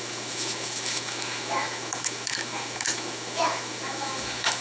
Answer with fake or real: fake